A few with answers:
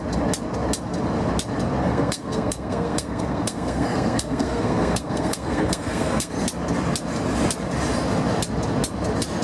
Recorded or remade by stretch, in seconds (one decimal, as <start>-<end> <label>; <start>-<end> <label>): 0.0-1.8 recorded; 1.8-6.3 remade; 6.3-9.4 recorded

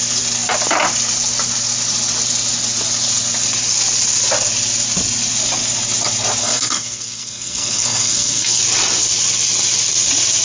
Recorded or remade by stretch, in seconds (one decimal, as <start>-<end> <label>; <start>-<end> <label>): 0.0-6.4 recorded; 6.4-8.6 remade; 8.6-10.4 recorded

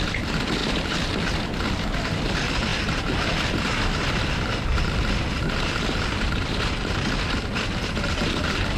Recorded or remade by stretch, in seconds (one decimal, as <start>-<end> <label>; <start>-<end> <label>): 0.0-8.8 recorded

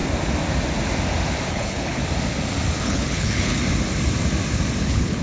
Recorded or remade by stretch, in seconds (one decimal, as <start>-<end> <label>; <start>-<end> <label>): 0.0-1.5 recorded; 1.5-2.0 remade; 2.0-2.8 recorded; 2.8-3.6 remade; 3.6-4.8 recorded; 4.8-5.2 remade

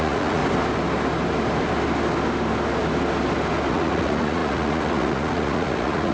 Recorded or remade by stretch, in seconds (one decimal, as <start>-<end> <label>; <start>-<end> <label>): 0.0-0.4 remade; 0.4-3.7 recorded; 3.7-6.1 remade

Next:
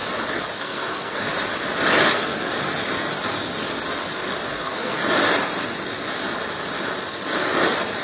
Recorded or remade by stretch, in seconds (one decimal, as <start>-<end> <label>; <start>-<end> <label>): 0.0-0.6 recorded; 0.6-1.3 remade; 1.3-2.1 recorded; 2.1-2.5 remade; 2.5-4.5 recorded; 4.5-5.0 remade; 5.0-8.0 recorded

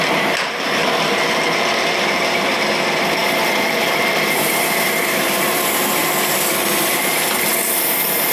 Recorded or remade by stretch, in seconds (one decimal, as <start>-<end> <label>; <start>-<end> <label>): 0.0-8.3 remade

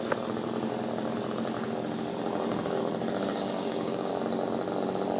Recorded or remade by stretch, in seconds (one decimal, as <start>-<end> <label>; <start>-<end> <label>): 0.0-2.1 recorded; 2.1-2.8 remade; 2.8-3.3 recorded; 3.3-4.1 remade; 4.1-5.2 recorded